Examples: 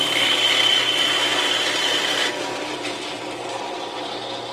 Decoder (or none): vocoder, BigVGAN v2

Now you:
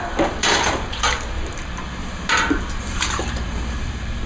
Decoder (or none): vocoder, BigVGAN v2